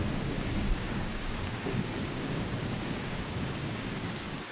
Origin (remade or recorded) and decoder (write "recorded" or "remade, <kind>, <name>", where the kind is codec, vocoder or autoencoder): remade, codec, DAC